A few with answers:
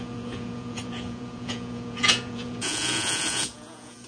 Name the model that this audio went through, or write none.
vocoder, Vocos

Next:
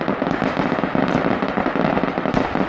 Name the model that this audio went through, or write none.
none